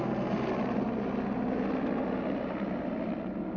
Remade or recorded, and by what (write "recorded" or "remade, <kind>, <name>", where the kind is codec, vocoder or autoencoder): recorded